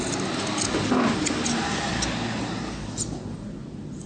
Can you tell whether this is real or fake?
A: real